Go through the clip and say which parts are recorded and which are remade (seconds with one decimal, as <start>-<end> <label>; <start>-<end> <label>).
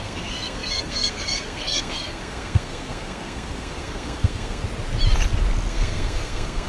0.0-4.6 remade; 4.6-5.7 recorded; 5.7-6.7 remade